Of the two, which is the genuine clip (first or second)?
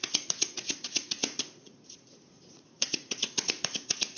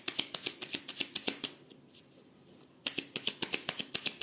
second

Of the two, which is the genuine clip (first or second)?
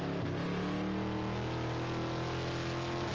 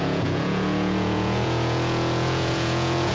first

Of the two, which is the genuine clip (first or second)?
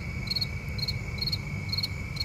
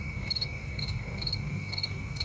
first